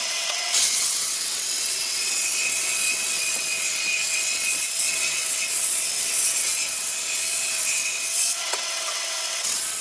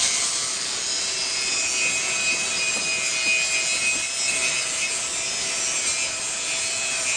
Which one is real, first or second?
second